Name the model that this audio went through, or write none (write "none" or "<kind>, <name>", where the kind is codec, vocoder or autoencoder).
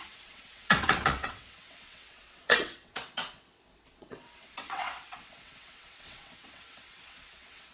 vocoder, WaveNeXt